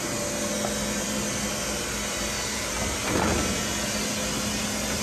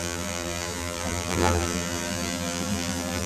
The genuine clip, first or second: first